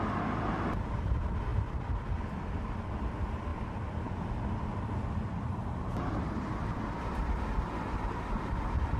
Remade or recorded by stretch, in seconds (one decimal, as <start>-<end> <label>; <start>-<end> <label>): 0.0-1.5 recorded; 1.5-2.0 remade; 2.0-3.5 recorded; 3.5-7.4 remade; 7.4-9.0 recorded